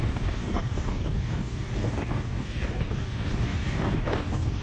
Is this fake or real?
fake